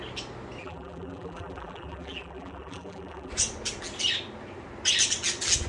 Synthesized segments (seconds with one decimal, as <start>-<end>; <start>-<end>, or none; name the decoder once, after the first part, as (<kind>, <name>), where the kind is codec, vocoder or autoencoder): 0.6-3.3 (vocoder, BigVGAN v2)